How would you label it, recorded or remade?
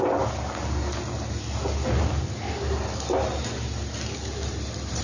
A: recorded